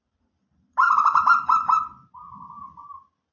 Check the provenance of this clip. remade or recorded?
recorded